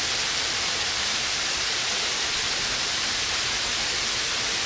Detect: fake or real real